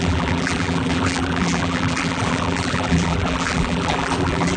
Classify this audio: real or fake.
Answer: fake